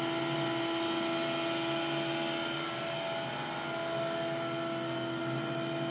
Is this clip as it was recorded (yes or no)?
yes